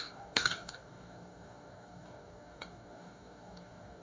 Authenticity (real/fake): fake